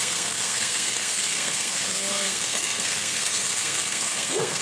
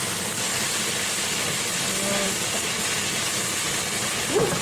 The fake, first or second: first